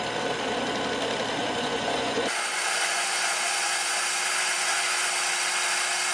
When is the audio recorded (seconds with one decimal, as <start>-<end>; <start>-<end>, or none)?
0.0-1.4; 5.1-6.1